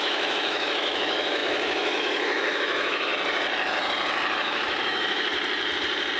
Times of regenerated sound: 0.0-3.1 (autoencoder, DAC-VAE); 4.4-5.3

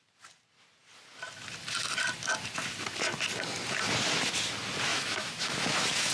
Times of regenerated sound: 4.9-6.1 (autoencoder, DAC-VAE)

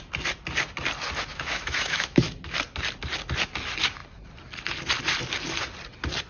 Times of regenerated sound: 1.3-2.2 (autoencoder, DAC-VAE)

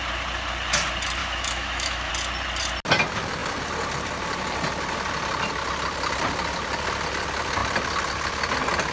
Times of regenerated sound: 1.2-2.1 (autoencoder, DAC-VAE)

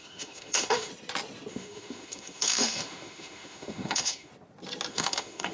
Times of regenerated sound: 0.0-0.9 (autoencoder, DAC-VAE); 1.5-4.3; 4.9-5.5

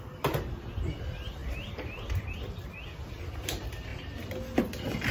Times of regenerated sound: none